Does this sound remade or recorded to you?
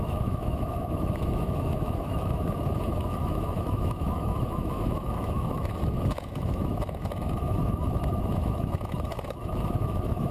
remade